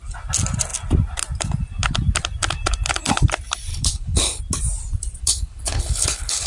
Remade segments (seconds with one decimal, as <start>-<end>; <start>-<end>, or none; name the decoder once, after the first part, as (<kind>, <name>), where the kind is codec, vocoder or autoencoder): 3.7-4.4 (codec, HILCodec); 5.2-6.5